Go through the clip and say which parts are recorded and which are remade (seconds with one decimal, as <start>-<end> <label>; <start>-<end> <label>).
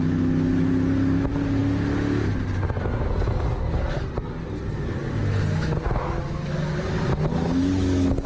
0.0-8.3 recorded